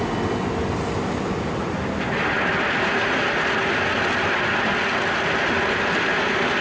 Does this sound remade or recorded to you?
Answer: recorded